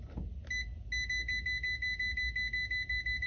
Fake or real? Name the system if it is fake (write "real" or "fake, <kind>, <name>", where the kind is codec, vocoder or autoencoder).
real